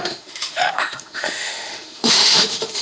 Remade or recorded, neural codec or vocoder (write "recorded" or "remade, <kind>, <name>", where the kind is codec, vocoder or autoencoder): remade, autoencoder, DAC-VAE